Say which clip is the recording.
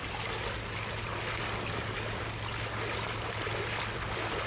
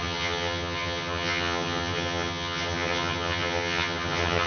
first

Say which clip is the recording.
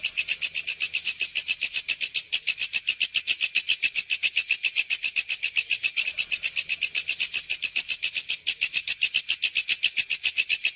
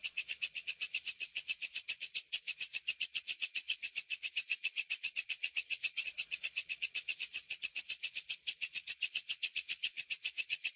first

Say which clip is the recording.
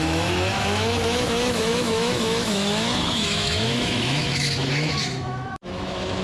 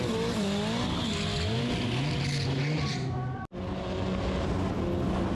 second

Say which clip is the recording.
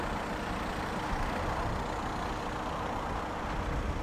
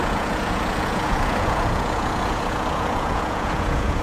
first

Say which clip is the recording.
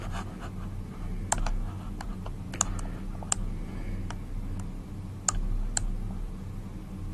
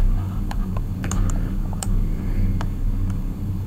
first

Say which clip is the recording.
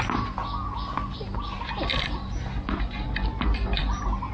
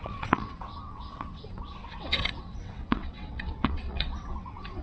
first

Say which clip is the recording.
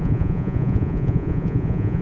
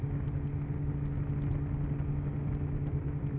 second